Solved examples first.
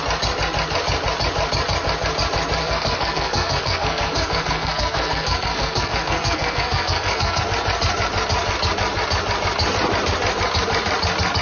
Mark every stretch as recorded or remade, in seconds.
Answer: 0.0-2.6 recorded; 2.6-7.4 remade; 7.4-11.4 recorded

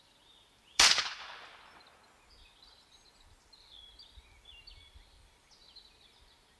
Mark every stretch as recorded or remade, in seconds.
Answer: 0.0-0.6 recorded; 0.6-1.3 remade; 1.3-6.6 recorded

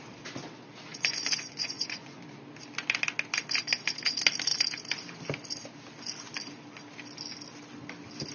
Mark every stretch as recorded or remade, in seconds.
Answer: 0.0-0.9 recorded; 0.9-2.2 remade; 2.2-8.3 recorded